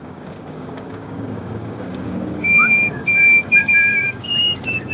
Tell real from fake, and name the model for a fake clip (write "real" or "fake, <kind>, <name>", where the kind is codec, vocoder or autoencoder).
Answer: fake, codec, DAC